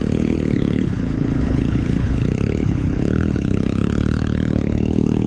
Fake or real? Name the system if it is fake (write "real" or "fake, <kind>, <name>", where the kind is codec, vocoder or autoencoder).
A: fake, codec, HILCodec